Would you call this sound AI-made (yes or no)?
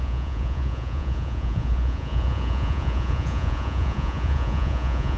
yes